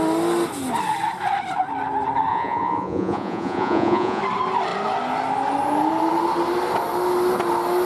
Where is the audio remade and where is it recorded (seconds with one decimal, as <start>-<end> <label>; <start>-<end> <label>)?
0.0-2.3 recorded; 2.3-4.2 remade; 4.2-7.9 recorded